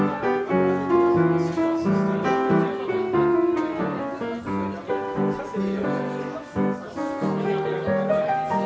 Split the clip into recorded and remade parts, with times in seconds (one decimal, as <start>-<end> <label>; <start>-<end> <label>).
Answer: 0.0-8.7 recorded